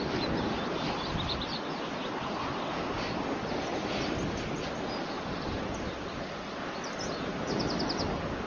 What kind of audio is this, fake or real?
real